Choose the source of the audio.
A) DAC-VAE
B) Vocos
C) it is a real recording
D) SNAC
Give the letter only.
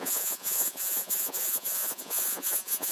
B